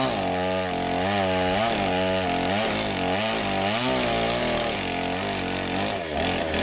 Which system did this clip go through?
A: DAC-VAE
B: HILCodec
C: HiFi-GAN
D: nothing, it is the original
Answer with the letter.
D